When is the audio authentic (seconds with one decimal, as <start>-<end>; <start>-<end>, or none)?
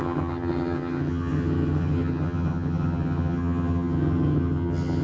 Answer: none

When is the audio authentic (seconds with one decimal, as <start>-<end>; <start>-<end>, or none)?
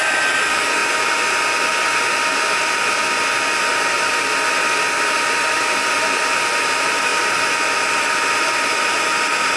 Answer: 0.8-3.6; 7.1-7.9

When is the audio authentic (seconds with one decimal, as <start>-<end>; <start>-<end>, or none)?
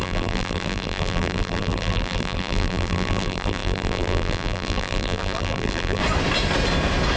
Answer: 6.0-7.2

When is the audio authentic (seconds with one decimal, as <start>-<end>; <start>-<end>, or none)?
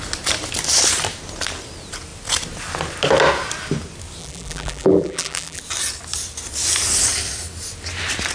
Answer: 0.0-4.2; 5.6-8.3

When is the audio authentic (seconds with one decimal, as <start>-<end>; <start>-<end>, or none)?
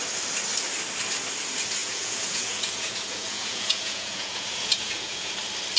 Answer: 0.0-1.8; 5.3-5.8